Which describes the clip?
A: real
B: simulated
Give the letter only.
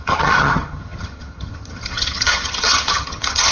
B